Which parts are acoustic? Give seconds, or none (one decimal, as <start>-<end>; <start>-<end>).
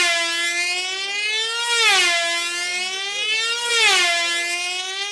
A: 0.0-5.1